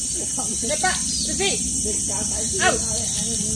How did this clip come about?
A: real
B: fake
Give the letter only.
A